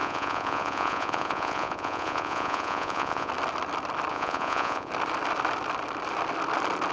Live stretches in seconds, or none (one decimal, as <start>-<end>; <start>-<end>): 3.3-4.1; 4.9-6.9